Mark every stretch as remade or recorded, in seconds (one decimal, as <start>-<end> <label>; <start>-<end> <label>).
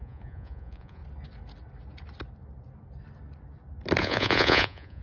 0.0-1.0 remade; 1.0-4.0 recorded; 4.0-5.0 remade